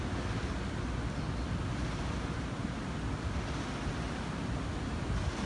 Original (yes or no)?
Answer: yes